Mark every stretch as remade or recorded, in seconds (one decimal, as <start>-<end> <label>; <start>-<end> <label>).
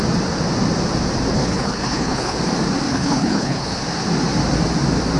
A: 0.0-1.3 recorded; 1.3-2.4 remade; 2.4-2.9 recorded; 2.9-3.8 remade; 3.8-5.2 recorded